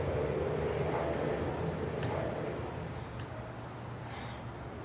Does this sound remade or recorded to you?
recorded